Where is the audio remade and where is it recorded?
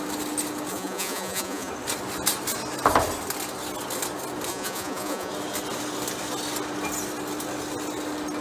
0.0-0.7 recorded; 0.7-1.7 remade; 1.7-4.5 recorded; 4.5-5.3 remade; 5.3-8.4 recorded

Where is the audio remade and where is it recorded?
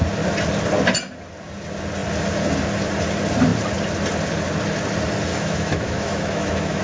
0.0-5.3 recorded; 5.3-6.8 remade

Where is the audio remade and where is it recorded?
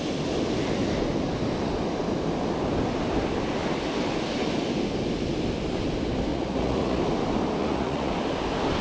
0.0-6.3 recorded; 6.3-7.0 remade; 7.0-7.6 recorded; 7.6-8.1 remade; 8.1-8.8 recorded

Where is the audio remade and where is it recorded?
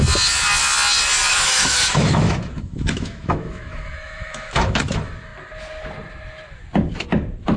0.0-1.3 recorded; 1.3-4.8 remade; 4.8-7.6 recorded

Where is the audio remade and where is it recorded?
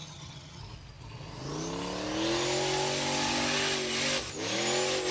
0.0-0.6 remade; 0.6-5.1 recorded